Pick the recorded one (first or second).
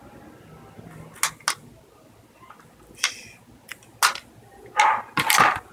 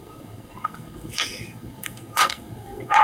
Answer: first